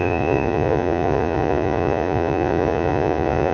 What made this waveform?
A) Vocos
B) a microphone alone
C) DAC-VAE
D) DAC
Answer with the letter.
A